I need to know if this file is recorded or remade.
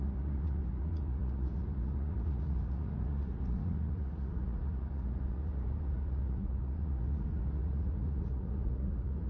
remade